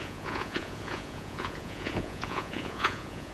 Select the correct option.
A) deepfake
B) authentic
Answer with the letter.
A